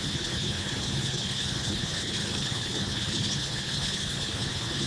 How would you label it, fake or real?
fake